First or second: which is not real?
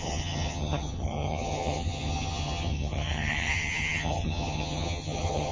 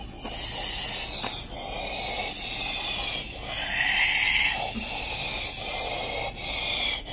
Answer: first